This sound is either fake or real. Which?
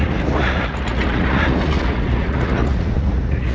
fake